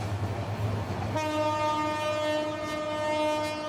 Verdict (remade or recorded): recorded